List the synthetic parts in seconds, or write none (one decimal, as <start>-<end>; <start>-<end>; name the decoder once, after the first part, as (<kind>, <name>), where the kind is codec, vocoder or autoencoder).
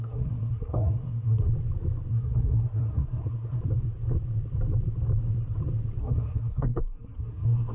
0.0-1.5 (codec, SNAC); 2.1-3.6; 6.0-7.7